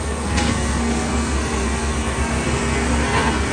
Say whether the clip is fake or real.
fake